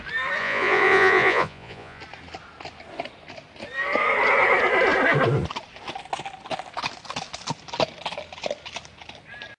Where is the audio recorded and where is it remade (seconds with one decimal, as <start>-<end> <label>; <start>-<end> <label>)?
0.0-0.4 recorded; 0.4-2.0 remade; 2.0-9.6 recorded